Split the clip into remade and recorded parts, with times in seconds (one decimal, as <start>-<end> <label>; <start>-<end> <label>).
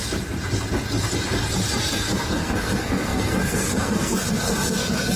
0.0-1.8 recorded; 1.8-5.2 remade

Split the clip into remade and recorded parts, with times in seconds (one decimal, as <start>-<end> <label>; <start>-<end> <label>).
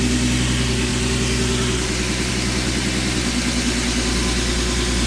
0.0-5.1 recorded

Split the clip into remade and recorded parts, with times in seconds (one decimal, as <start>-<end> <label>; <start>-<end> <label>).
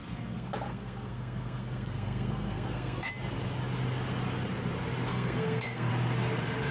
0.0-3.1 remade; 3.1-5.1 recorded; 5.1-5.9 remade; 5.9-6.7 recorded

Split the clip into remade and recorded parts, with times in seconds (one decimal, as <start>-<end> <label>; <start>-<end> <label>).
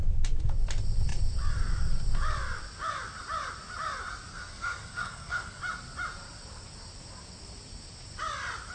0.0-4.3 recorded; 4.3-5.6 remade; 5.6-8.7 recorded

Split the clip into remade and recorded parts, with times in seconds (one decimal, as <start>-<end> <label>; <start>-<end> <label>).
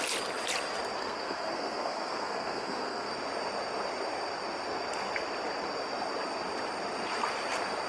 0.0-1.0 recorded; 1.0-3.1 remade; 3.1-7.9 recorded